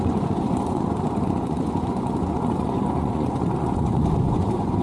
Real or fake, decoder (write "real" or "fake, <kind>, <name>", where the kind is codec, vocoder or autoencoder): fake, vocoder, Vocos